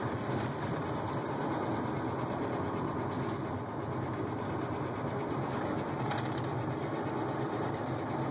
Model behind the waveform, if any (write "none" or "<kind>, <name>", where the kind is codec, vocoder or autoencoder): none